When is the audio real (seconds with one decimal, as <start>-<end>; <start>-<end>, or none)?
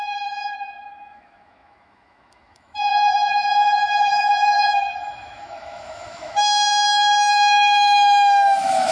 none